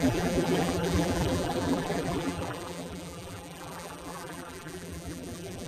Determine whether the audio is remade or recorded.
remade